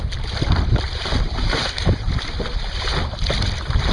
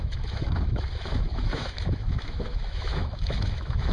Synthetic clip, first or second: second